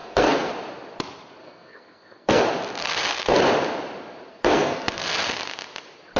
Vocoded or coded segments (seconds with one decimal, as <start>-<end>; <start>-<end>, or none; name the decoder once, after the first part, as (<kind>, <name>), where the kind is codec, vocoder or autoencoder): 0.0-0.5 (codec, SNAC); 1.4-2.4; 2.8-3.4; 4.3-5.3